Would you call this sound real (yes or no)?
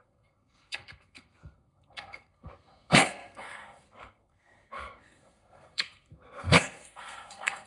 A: no